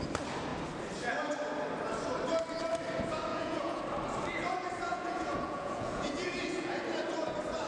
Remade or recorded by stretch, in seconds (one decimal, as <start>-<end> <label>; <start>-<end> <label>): 0.0-3.3 recorded; 3.3-3.8 remade; 3.8-4.9 recorded; 4.9-6.8 remade; 6.8-7.7 recorded

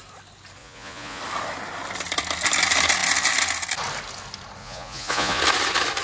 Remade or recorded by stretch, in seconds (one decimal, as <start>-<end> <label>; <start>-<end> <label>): 0.0-0.6 recorded; 0.6-1.2 remade; 1.2-4.6 recorded; 4.6-5.4 remade; 5.4-6.0 recorded

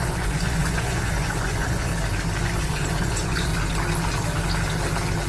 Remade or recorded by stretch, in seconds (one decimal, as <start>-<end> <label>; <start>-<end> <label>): 0.0-1.9 remade; 1.9-2.4 recorded; 2.4-3.5 remade; 3.5-5.3 recorded